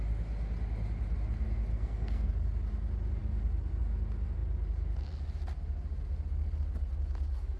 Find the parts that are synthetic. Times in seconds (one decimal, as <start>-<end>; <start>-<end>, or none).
1.7-2.3